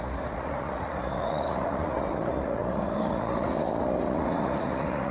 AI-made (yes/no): yes